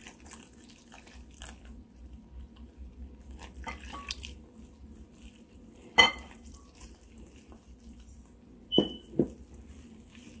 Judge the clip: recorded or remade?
recorded